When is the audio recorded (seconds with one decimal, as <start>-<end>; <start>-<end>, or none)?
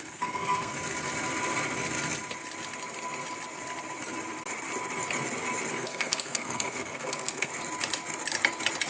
0.7-5.7; 7.5-8.9